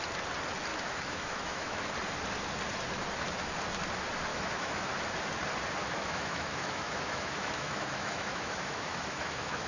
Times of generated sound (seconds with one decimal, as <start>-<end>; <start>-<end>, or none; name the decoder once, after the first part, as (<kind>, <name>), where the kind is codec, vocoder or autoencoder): 0.7-1.8 (autoencoder, DAC-VAE); 4.3-4.9; 5.8-9.7